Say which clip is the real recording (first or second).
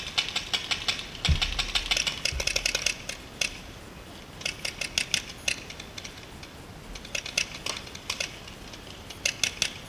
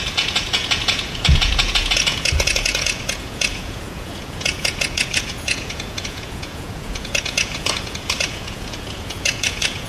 first